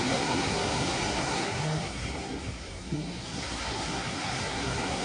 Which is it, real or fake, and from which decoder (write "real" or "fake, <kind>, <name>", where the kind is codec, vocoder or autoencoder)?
fake, codec, SNAC